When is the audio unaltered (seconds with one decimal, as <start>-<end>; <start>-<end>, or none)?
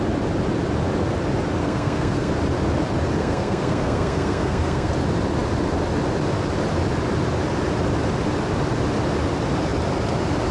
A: 0.0-1.6; 2.3-3.2; 4.9-10.5